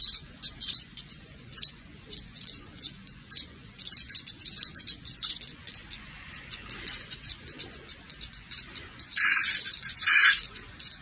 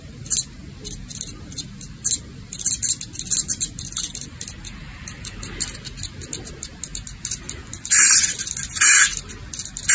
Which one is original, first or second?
second